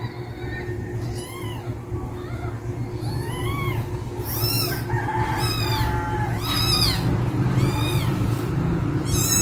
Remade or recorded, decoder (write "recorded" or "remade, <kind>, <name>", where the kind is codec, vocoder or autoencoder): recorded